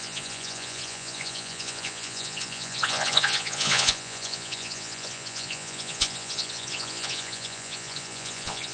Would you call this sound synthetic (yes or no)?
yes